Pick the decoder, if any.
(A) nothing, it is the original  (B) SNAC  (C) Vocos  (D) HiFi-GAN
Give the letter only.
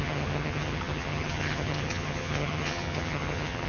D